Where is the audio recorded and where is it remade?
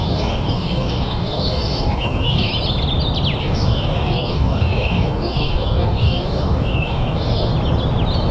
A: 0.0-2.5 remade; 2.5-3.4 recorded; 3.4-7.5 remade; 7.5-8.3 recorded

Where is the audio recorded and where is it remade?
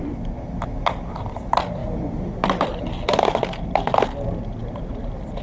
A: 0.0-5.4 recorded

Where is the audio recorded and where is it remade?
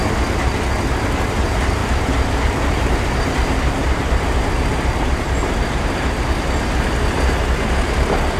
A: 0.0-1.8 recorded; 1.8-6.1 remade; 6.1-8.4 recorded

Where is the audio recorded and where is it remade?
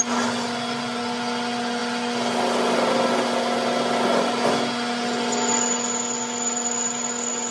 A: 0.0-7.5 recorded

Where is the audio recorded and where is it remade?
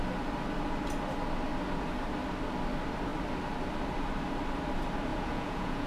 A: 0.0-5.1 recorded; 5.1-5.9 remade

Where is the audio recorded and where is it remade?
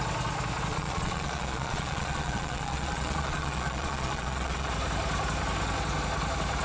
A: 0.0-0.7 recorded; 0.7-4.7 remade; 4.7-6.6 recorded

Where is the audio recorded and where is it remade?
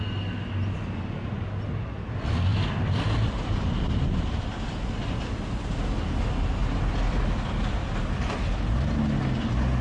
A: 0.0-2.5 recorded; 2.5-5.0 remade; 5.0-6.6 recorded; 6.6-8.6 remade; 8.6-9.8 recorded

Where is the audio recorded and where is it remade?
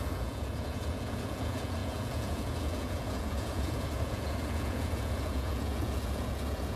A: 0.0-6.8 remade